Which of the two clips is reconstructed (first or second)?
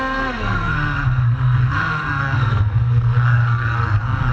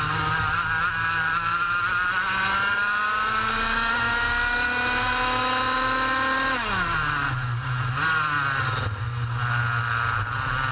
first